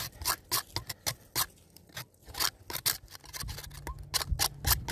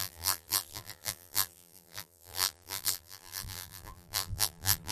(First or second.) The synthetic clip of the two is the second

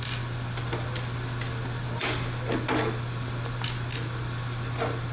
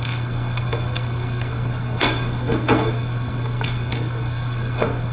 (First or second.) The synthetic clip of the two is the second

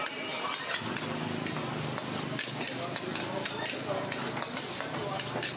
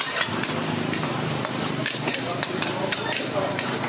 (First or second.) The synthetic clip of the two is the second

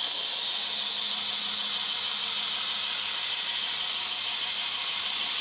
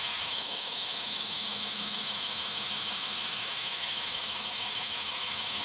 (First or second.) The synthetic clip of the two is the second